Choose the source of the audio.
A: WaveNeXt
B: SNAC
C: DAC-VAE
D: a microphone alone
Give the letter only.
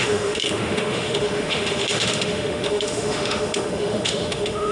C